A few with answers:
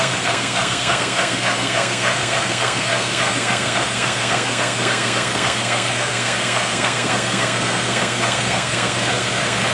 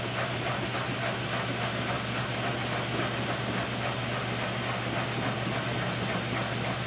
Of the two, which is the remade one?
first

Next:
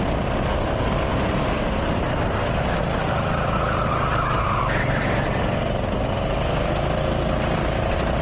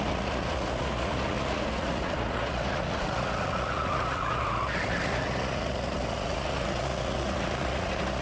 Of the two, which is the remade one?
second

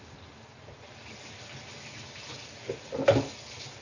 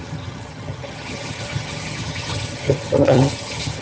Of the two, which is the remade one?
second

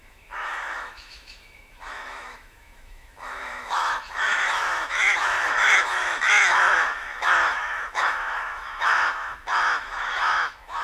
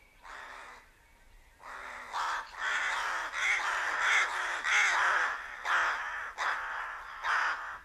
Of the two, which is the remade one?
first